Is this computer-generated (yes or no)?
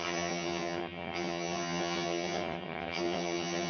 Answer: yes